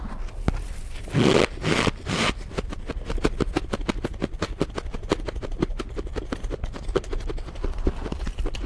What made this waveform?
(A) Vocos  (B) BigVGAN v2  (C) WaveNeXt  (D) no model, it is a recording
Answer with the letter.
D